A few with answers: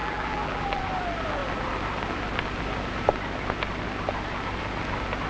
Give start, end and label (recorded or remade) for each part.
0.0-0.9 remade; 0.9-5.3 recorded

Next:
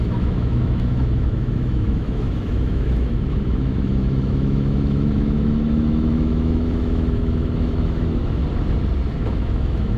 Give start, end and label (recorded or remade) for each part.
0.0-8.4 remade; 8.4-9.2 recorded; 9.2-10.0 remade